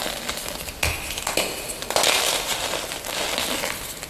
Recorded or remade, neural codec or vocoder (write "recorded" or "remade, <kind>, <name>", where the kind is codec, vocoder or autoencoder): recorded